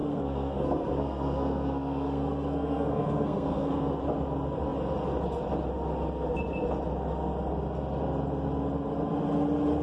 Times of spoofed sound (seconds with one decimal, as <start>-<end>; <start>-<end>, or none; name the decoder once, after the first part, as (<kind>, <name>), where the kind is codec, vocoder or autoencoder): 0.0-4.0 (codec, SNAC)